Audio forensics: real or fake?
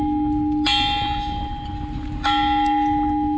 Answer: real